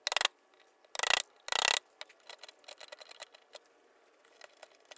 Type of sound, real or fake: real